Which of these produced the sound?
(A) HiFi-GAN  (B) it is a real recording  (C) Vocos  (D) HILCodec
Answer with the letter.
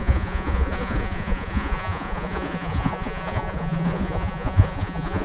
C